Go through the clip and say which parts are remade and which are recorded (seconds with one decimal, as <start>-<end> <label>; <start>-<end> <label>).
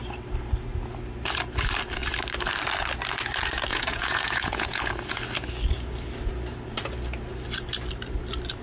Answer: 0.0-3.7 recorded; 3.7-4.9 remade; 4.9-8.6 recorded